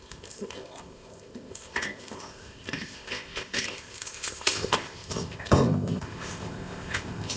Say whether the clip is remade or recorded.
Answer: remade